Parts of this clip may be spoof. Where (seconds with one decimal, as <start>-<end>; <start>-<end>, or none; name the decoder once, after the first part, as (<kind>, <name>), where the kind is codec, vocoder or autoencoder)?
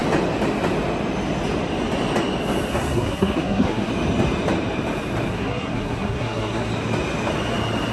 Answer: 2.7-3.9 (codec, SNAC); 5.3-6.7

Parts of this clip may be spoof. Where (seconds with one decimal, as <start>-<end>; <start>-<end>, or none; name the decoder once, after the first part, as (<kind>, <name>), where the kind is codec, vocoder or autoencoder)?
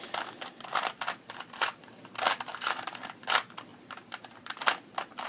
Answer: 2.5-3.2 (vocoder, BigVGAN v2); 3.7-4.4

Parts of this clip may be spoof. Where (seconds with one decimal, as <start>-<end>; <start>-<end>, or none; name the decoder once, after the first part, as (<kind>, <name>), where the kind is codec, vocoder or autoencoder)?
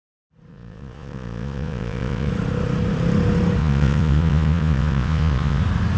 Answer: 0.5-2.3 (vocoder, Vocos); 3.6-5.6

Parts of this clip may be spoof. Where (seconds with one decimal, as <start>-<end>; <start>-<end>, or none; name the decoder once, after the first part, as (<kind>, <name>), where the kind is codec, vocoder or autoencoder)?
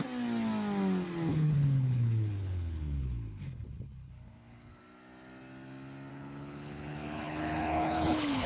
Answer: 1.3-4.8 (codec, HILCodec); 6.1-8.5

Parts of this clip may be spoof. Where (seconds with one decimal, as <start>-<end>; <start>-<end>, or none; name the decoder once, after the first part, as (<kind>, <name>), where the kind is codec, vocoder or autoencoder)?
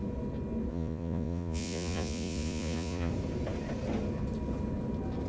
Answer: 0.7-3.1 (vocoder, Vocos)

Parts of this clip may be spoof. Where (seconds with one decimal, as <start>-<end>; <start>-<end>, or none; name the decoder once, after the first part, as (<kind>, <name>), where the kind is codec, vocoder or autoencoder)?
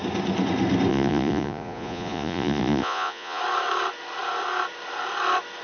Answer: 0.9-3.4 (vocoder, Vocos)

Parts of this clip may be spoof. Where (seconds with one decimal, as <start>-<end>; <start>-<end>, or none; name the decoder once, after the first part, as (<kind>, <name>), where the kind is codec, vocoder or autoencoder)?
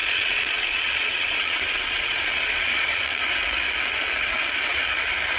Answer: 0.0-3.2 (vocoder, Vocos)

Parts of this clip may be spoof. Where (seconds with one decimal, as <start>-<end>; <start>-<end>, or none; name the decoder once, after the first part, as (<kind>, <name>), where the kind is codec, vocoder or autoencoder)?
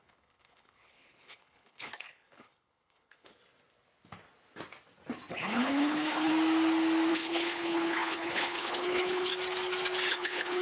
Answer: 0.0-3.3 (codec, HILCodec); 5.3-6.3; 7.1-9.3; 10.1-10.6